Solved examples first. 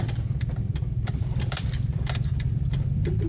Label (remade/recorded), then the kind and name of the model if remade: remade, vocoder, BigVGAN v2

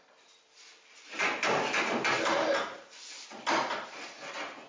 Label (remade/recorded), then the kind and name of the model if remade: remade, vocoder, BigVGAN v2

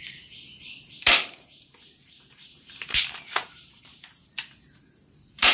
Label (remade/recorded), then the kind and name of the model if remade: remade, vocoder, BigVGAN v2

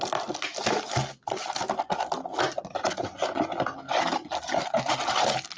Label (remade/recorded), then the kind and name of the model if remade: recorded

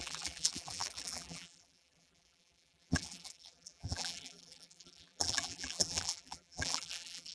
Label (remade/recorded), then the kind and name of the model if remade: remade, vocoder, BigVGAN v2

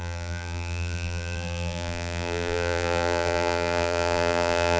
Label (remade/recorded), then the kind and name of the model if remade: remade, vocoder, BigVGAN v2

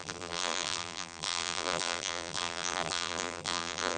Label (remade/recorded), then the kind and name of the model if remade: remade, vocoder, BigVGAN v2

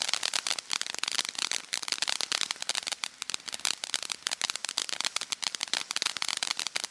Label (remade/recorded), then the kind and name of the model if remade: remade, vocoder, BigVGAN v2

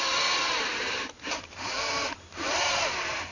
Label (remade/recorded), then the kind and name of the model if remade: remade, vocoder, BigVGAN v2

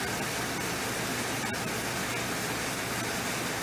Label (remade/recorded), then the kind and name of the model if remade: recorded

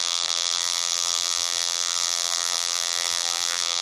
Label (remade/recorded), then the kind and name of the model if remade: remade, vocoder, BigVGAN v2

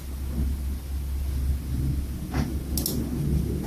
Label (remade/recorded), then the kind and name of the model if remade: recorded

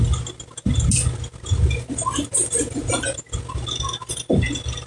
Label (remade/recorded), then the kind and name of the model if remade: recorded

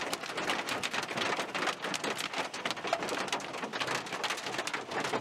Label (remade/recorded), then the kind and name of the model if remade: recorded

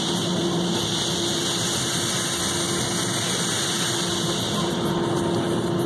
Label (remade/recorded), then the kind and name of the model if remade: recorded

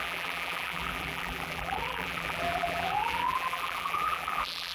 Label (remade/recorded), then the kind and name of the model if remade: remade, vocoder, BigVGAN v2